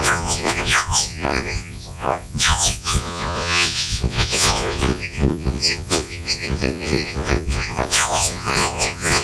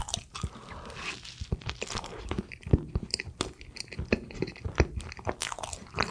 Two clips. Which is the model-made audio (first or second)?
first